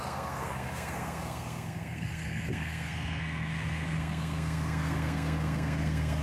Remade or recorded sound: remade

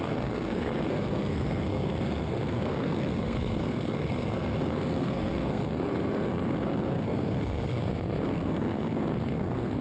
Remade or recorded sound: remade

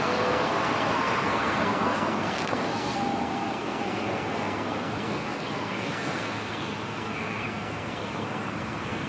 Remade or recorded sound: remade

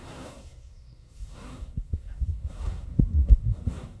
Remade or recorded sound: remade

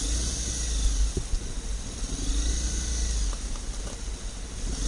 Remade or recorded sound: recorded